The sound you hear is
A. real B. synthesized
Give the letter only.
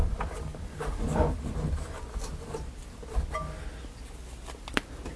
A